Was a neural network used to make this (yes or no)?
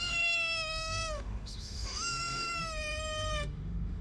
yes